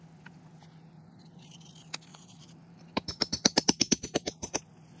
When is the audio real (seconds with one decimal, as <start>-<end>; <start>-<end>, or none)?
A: 0.0-2.1; 4.6-5.0